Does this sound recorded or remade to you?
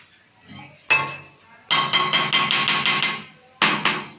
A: recorded